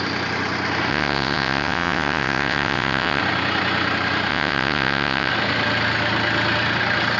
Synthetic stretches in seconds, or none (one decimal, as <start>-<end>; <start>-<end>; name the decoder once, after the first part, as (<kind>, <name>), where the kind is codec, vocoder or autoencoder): 0.9-3.2 (vocoder, WaveNeXt); 4.3-5.3

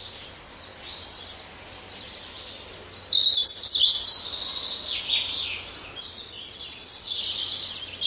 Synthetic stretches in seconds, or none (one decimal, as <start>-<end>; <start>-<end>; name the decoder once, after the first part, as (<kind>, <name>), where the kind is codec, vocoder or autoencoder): 6.0-7.2 (vocoder, WaveNeXt)

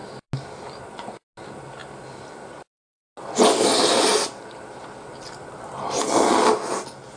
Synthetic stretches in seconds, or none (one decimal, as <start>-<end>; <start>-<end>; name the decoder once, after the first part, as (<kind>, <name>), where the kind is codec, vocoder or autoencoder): none

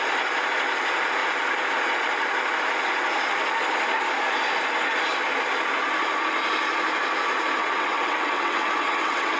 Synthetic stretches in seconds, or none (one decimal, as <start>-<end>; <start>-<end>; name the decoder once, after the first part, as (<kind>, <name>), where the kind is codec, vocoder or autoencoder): 7.6-9.4 (vocoder, WaveNeXt)